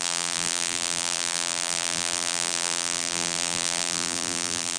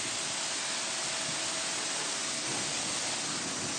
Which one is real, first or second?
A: second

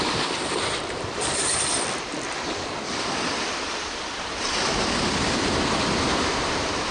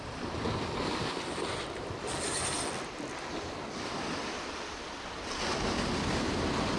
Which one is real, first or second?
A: second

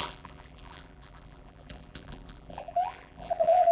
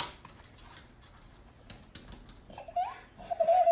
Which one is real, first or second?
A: second